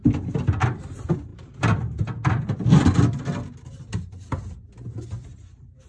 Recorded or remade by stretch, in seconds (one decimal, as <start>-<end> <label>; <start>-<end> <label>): 0.0-5.9 recorded